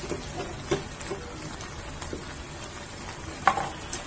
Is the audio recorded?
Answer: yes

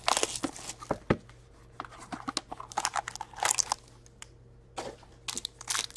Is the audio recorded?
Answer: yes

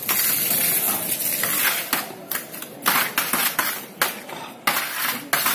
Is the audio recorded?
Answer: yes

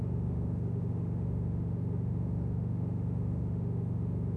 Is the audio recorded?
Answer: no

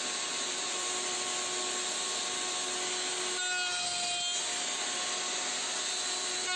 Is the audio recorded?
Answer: yes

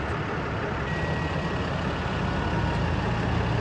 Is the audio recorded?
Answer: yes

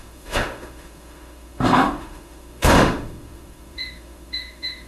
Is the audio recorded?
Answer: no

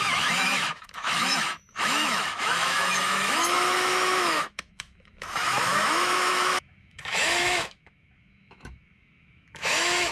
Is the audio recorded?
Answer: no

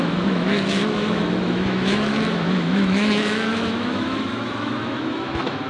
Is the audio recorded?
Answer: no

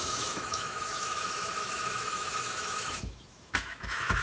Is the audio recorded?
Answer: no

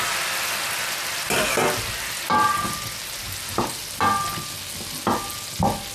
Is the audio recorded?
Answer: yes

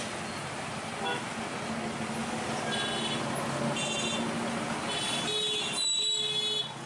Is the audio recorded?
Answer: yes